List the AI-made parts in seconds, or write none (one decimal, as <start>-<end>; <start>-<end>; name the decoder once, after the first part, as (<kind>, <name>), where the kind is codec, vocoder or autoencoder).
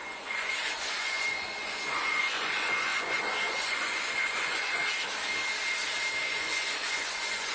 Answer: 0.0-4.8 (vocoder, Vocos); 6.2-7.5